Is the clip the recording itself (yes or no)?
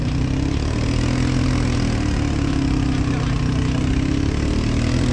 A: yes